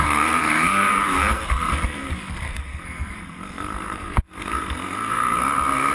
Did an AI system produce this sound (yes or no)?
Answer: yes